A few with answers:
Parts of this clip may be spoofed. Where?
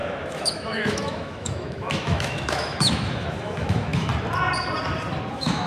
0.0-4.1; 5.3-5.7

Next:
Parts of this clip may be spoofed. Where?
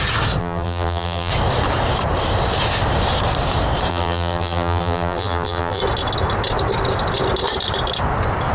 0.4-1.3; 3.9-5.8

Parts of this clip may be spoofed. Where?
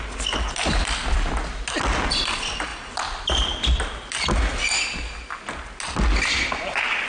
2.7-4.4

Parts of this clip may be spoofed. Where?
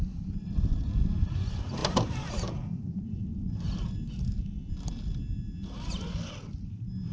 0.0-3.3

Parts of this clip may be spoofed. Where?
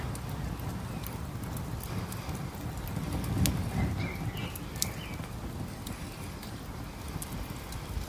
none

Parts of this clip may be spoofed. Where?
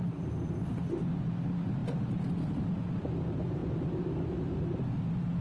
none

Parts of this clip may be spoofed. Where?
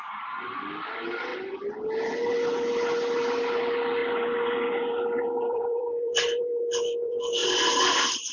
0.0-1.3; 2.3-7.4; 7.9-8.3